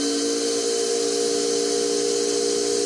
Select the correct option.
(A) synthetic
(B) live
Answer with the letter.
B